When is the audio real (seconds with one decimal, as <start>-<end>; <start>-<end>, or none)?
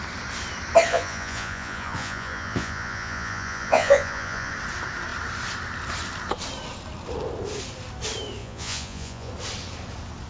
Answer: 0.0-0.9; 4.5-8.4; 9.3-10.3